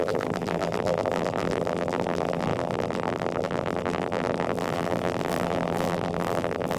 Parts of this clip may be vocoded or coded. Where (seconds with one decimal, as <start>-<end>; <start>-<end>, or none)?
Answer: 0.0-6.8